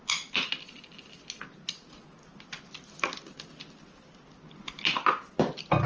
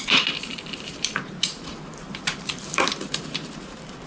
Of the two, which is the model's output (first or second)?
second